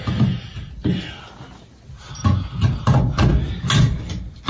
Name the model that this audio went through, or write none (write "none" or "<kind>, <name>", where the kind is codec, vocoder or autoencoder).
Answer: none